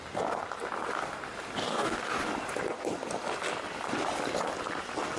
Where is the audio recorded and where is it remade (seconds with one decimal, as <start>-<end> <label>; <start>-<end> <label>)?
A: 0.0-1.6 recorded; 1.6-2.3 remade; 2.3-5.2 recorded